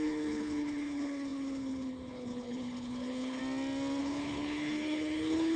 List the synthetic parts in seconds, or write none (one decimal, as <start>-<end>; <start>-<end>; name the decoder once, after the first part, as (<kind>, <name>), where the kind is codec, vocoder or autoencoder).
0.0-3.4 (codec, HILCodec); 4.0-5.6